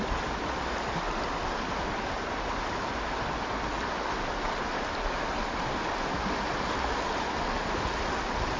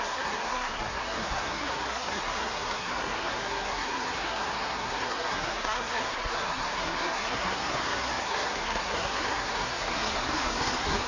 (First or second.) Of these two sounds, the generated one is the second